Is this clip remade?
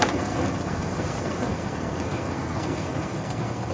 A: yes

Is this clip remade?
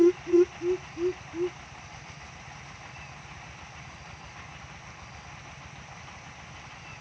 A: no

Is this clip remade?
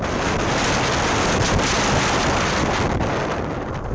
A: no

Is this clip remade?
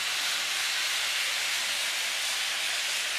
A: no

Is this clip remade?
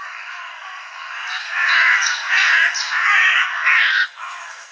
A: yes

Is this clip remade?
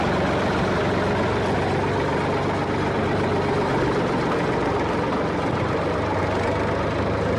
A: no